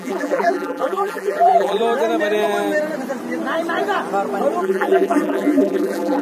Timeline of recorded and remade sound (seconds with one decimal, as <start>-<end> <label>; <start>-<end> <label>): 0.0-1.8 remade; 1.8-4.6 recorded; 4.6-6.2 remade